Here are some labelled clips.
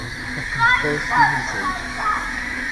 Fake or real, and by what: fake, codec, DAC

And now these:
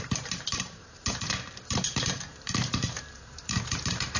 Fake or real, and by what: fake, vocoder, BigVGAN v2